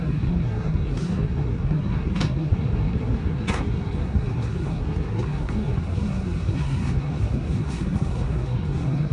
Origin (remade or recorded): remade